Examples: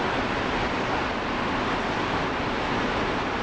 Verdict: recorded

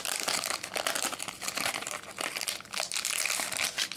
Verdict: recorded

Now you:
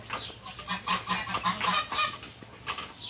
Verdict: recorded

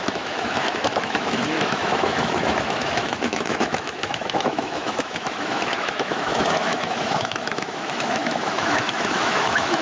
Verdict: remade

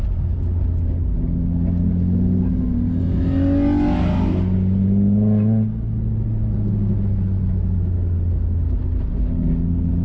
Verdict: recorded